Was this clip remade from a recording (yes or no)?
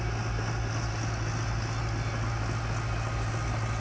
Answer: no